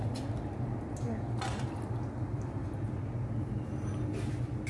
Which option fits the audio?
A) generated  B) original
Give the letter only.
B